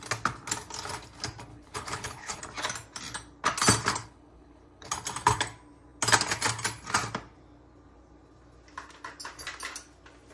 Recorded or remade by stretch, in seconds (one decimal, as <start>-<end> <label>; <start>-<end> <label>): 0.0-1.5 recorded; 1.5-2.4 remade; 2.4-4.0 recorded; 4.0-4.9 remade; 4.9-10.3 recorded